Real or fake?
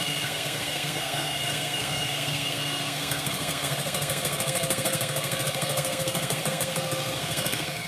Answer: fake